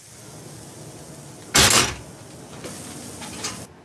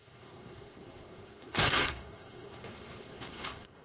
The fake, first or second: second